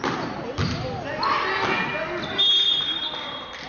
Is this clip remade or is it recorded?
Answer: recorded